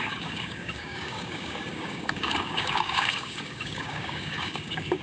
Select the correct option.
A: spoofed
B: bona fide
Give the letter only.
A